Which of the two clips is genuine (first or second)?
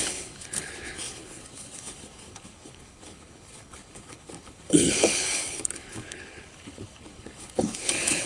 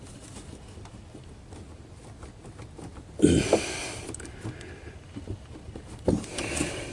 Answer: second